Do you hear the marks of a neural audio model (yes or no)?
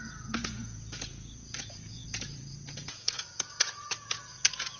yes